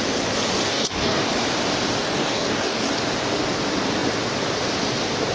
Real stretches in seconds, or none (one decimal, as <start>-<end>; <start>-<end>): 0.0-0.7; 1.3-2.0; 2.9-5.3